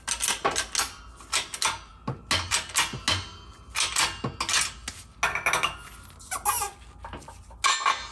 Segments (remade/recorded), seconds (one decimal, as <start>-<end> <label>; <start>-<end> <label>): 0.0-8.1 recorded